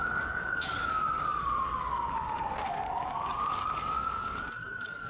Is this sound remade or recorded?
remade